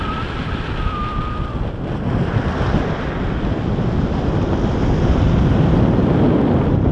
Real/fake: real